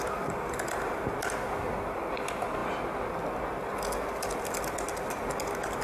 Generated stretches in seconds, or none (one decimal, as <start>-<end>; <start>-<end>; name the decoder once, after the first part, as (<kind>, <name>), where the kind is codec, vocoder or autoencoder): none

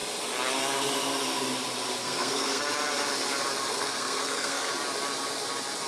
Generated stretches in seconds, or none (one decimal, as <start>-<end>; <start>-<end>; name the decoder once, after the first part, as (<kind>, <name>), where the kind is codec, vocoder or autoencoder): 2.0-2.6 (codec, SNAC); 3.7-4.7

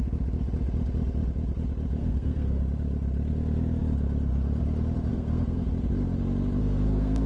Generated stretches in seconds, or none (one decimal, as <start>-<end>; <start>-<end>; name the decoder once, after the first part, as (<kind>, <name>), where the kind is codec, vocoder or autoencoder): 2.0-2.6 (codec, SNAC); 5.1-5.7; 6.6-7.3

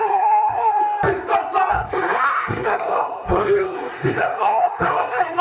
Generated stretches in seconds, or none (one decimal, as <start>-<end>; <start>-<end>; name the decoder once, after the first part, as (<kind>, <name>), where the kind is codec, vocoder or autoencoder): 0.0-0.8 (codec, SNAC); 1.7-5.4